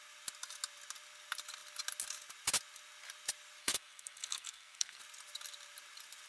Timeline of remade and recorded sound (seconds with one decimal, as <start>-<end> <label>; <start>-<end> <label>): 0.0-3.6 recorded; 3.6-5.0 remade; 5.0-6.3 recorded